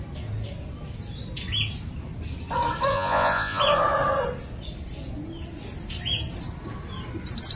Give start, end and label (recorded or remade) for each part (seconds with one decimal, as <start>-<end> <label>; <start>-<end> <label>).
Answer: 0.0-2.9 recorded; 2.9-3.6 remade; 3.6-7.6 recorded